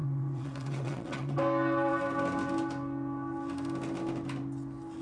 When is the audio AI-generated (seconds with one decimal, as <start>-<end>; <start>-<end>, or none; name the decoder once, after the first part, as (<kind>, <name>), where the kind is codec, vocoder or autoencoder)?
0.0-1.4 (vocoder, WaveNeXt)